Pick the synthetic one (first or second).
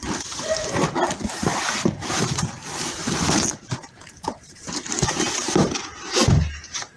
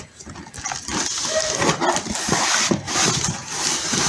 first